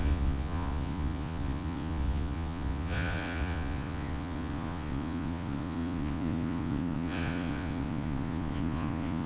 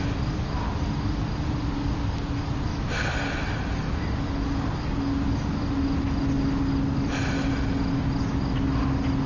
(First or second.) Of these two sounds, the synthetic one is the first